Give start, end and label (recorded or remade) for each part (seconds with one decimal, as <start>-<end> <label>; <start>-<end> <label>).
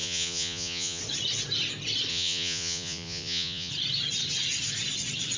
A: 0.0-1.0 remade; 1.0-2.1 recorded; 2.1-3.7 remade; 3.7-5.4 recorded